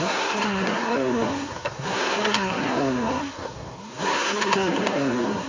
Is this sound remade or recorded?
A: remade